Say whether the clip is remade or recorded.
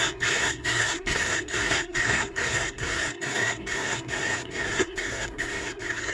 remade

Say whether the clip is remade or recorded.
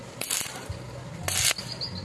recorded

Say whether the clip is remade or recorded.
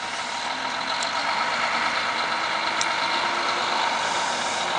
recorded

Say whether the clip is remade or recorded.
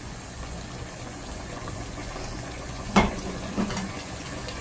remade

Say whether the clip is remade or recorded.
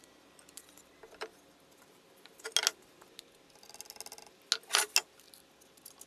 recorded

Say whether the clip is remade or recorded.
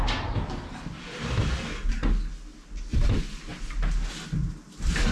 recorded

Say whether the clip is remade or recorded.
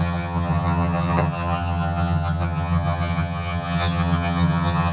remade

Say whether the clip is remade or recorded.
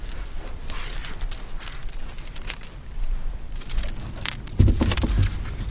recorded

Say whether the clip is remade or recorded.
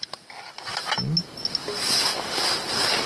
recorded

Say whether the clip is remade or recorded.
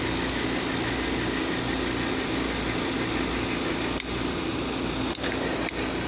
recorded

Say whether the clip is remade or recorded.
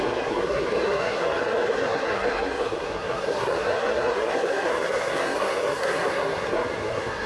remade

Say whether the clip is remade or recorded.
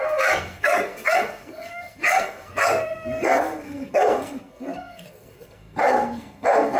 remade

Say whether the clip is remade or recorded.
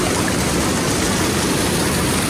recorded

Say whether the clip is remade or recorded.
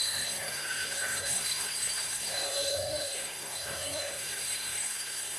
remade